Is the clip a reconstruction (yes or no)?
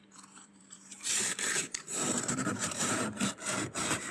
yes